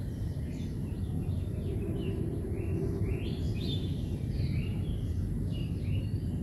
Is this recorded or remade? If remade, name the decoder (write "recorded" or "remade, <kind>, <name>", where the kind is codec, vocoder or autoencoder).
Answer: remade, vocoder, BigVGAN v2